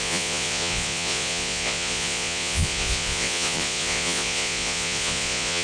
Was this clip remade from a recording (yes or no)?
yes